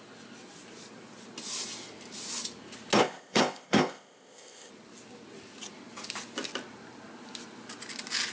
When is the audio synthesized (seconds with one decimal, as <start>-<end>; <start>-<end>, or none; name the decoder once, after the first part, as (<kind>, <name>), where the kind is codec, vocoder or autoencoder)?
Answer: 3.0-4.7 (codec, ZipCodec)